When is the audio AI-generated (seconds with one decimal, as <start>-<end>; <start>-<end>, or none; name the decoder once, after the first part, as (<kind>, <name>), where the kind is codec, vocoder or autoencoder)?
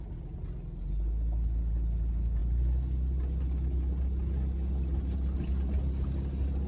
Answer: none